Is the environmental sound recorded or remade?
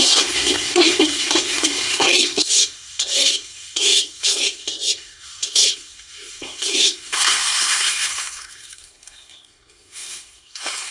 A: remade